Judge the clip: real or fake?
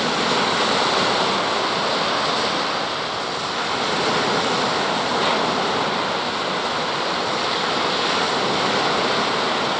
real